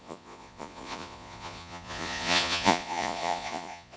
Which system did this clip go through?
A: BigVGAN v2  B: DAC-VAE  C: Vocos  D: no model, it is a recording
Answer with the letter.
C